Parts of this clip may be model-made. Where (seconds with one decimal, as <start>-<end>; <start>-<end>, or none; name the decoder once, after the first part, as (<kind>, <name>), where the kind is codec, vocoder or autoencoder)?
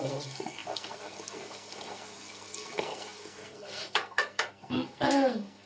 0.0-5.7 (codec, SNAC)